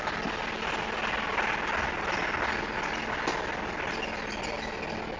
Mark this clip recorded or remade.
recorded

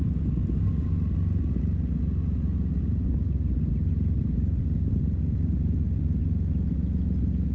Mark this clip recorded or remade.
recorded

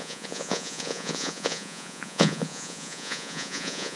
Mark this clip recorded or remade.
remade